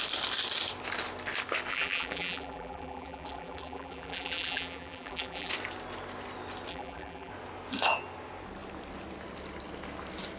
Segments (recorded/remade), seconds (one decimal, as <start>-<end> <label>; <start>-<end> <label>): 0.0-1.7 recorded; 1.7-5.5 remade; 5.5-6.7 recorded; 6.7-7.3 remade; 7.3-10.4 recorded